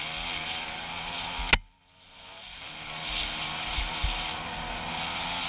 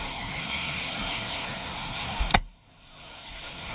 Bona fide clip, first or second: first